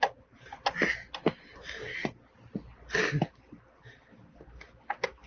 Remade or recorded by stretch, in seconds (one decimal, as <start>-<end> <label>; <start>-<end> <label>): 0.0-5.3 recorded